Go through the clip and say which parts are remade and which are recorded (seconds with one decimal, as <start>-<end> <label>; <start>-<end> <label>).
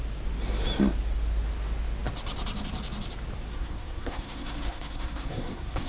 0.0-3.5 recorded; 3.5-5.9 remade